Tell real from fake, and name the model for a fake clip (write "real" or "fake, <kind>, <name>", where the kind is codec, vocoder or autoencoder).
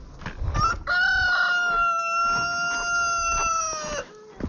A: real